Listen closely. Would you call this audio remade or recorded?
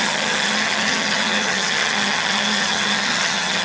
remade